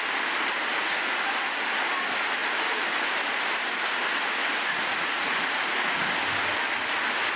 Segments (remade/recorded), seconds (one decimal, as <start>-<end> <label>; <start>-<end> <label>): 0.0-0.7 recorded; 0.7-1.2 remade; 1.2-4.4 recorded; 4.4-6.1 remade; 6.1-7.4 recorded